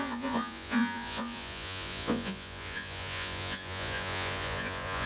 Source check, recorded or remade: remade